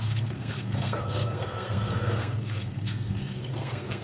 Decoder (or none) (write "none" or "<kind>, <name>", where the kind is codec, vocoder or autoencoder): codec, SNAC